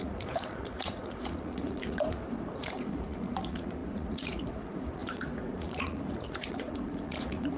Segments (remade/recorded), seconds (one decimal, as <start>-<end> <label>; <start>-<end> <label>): 0.0-7.6 remade

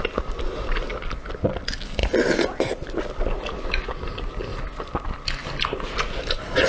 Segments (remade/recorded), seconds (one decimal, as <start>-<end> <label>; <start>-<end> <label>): 0.0-6.7 recorded

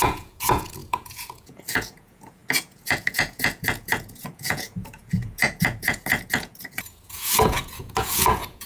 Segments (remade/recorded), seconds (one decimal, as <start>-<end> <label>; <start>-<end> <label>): 0.0-8.7 remade